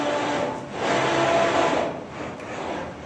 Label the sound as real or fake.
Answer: real